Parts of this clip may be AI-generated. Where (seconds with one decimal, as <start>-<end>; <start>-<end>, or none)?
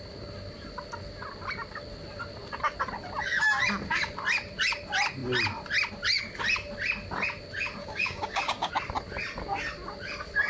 7.8-8.7